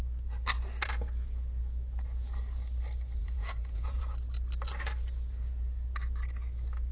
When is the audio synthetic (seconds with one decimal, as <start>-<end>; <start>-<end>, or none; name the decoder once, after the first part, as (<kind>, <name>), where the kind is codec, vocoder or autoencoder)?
3.2-4.0 (vocoder, Vocos)